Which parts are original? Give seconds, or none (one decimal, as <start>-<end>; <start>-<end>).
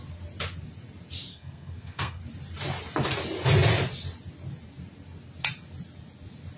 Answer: 0.0-1.3; 2.2-6.6